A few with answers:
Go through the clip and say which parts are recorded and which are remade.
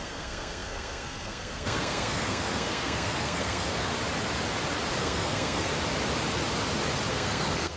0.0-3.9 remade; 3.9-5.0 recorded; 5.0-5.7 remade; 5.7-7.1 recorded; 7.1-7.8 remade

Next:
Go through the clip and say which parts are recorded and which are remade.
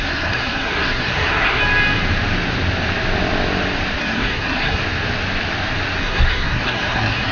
0.0-1.6 remade; 1.6-4.0 recorded; 4.0-4.8 remade; 4.8-6.0 recorded; 6.0-7.3 remade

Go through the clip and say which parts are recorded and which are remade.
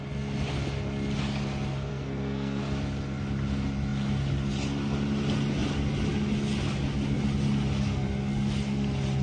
0.0-1.9 recorded; 1.9-2.6 remade; 2.6-9.2 recorded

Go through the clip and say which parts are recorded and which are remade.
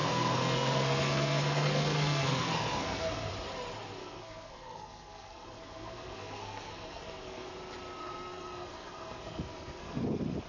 0.0-3.3 remade; 3.3-4.0 recorded; 4.0-7.5 remade; 7.5-8.0 recorded; 8.0-10.0 remade; 10.0-10.5 recorded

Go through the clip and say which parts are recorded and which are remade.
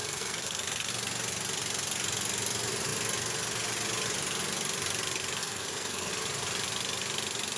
0.0-0.9 remade; 0.9-5.4 recorded; 5.4-6.1 remade; 6.1-7.6 recorded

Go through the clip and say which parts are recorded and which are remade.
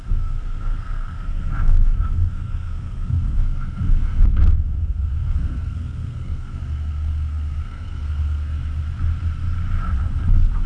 0.0-8.5 remade; 8.5-10.7 recorded